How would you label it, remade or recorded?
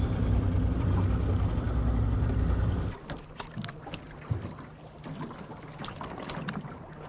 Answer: recorded